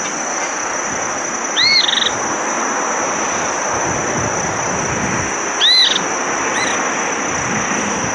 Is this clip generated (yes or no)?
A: no